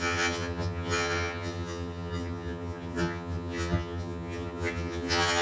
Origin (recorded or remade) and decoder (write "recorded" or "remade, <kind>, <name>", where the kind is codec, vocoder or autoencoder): remade, vocoder, HiFi-GAN